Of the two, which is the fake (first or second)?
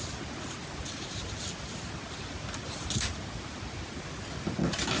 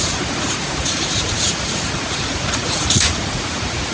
second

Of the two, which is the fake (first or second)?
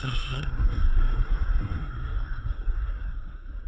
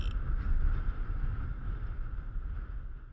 first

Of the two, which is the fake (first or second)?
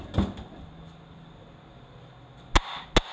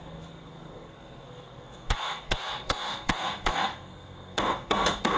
second